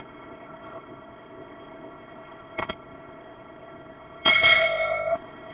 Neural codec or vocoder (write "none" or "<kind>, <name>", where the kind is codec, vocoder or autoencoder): codec, ZipCodec